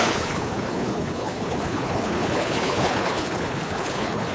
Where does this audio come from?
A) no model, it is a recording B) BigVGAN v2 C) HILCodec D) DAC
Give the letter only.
C